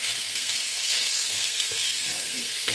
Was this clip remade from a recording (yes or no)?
yes